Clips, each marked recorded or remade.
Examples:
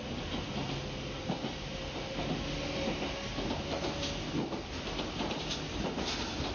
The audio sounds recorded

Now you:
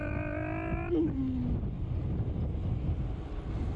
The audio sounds recorded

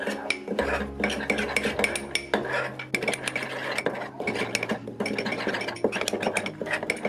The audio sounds recorded